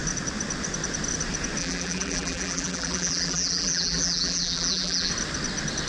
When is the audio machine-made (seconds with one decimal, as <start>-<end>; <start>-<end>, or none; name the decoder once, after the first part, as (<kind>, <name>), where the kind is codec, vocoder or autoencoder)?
1.6-5.1 (vocoder, BigVGAN v2)

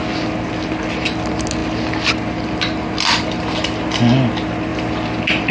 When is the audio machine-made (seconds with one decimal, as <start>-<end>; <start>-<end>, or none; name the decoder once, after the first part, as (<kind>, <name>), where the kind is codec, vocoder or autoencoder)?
none

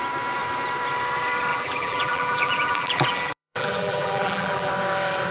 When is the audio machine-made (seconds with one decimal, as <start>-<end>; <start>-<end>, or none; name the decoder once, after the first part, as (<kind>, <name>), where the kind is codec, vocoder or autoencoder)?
1.5-4.7 (vocoder, BigVGAN v2)

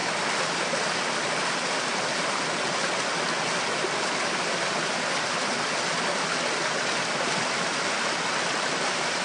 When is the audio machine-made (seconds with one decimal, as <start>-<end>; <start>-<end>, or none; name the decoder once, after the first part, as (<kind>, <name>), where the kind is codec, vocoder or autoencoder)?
none